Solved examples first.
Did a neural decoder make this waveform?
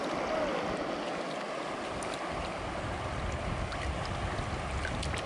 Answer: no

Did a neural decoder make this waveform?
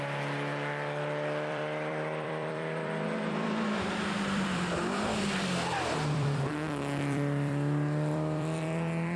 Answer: yes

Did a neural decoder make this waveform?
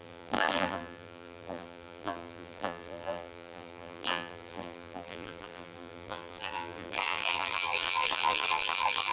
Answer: yes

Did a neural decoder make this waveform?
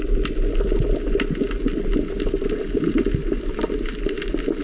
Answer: no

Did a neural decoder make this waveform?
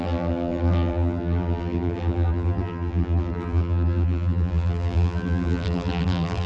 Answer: yes